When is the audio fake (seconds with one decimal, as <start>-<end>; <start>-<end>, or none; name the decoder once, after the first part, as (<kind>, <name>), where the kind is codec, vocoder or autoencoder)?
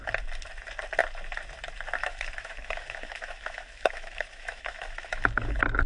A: 2.0-5.5 (autoencoder, DAC-VAE)